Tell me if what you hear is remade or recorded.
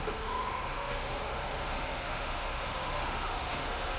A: remade